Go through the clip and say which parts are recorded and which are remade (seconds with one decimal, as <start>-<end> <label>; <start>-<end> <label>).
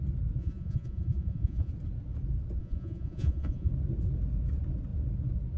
0.0-0.4 recorded; 0.4-1.7 remade; 1.7-2.6 recorded; 2.6-3.7 remade; 3.7-5.6 recorded